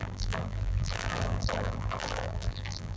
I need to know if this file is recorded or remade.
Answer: remade